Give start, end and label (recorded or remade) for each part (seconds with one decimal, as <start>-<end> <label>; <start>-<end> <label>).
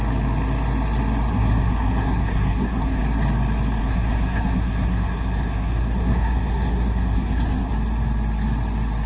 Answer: 0.0-1.3 recorded; 1.3-3.0 remade; 3.0-3.8 recorded; 3.8-7.7 remade; 7.7-9.1 recorded